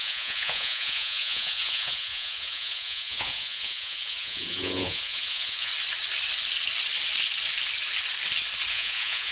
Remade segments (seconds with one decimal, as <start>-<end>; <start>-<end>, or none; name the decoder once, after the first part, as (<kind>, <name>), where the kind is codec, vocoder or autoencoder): 0.0-5.7 (vocoder, Vocos); 8.7-9.3